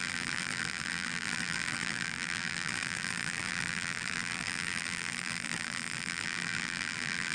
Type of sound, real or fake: fake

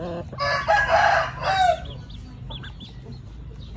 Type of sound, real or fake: real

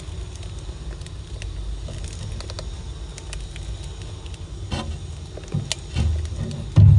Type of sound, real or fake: real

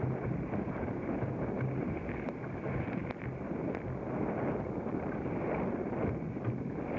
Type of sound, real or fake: real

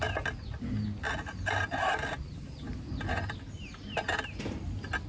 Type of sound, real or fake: real